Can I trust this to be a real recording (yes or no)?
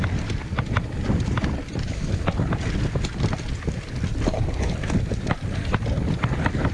yes